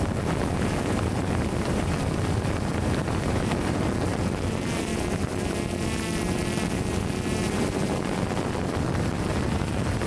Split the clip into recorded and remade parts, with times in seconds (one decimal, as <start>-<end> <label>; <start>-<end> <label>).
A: 0.0-2.0 remade; 2.0-2.7 recorded; 2.7-4.9 remade; 4.9-9.0 recorded; 9.0-10.1 remade